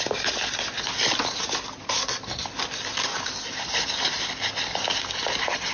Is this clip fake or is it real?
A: real